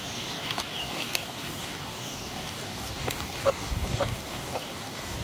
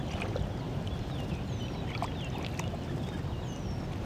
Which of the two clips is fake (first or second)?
first